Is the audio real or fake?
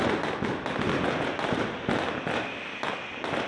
real